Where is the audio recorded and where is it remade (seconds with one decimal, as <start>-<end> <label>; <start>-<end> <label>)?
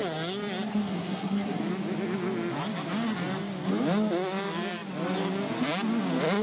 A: 0.0-0.7 recorded; 0.7-1.6 remade; 1.6-6.4 recorded